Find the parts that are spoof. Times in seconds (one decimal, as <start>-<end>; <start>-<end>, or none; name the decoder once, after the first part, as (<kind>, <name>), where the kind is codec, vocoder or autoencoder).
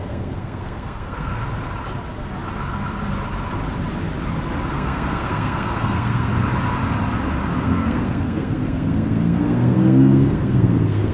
0.0-1.3 (codec, SNAC); 4.7-6.3; 7.6-11.1